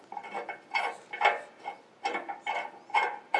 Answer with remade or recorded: recorded